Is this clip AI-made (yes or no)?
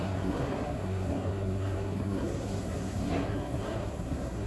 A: yes